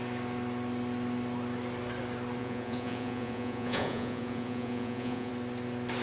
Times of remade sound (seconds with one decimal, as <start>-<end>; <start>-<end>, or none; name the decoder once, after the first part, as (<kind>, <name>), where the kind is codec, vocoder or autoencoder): 2.4-5.3 (vocoder, Vocos)